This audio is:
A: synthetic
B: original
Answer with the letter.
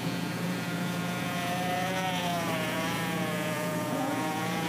A